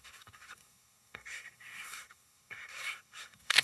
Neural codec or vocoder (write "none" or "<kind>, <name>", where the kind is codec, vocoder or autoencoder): codec, SNAC